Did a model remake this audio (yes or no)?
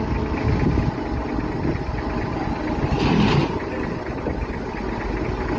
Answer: no